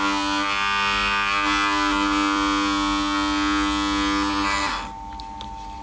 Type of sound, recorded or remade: recorded